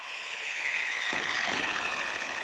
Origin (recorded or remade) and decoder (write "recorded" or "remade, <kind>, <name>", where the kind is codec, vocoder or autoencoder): remade, codec, HILCodec